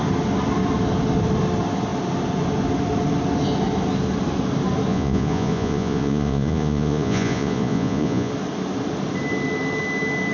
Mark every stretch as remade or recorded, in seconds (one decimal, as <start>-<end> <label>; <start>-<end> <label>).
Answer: 0.0-4.9 recorded; 4.9-8.3 remade; 8.3-10.3 recorded